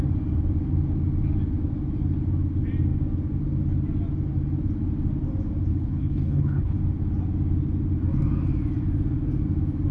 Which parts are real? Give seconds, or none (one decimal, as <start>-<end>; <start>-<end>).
0.0-5.7; 6.8-9.9